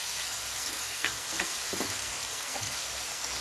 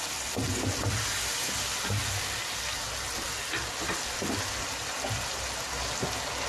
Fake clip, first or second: first